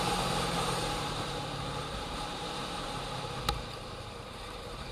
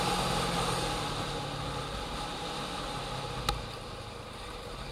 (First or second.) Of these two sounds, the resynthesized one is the first